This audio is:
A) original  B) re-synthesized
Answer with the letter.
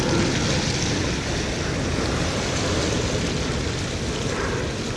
A